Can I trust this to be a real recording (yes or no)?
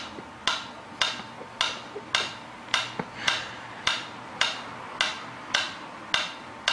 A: yes